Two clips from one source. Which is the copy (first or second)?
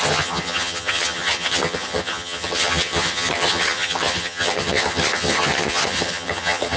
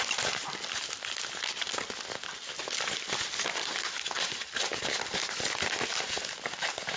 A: first